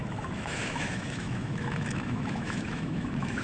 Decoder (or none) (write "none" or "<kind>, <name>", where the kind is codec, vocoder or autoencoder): autoencoder, DAC-VAE